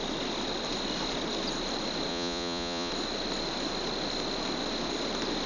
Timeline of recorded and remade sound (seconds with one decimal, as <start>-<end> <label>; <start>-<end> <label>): 0.0-2.1 recorded; 2.1-2.9 remade; 2.9-5.5 recorded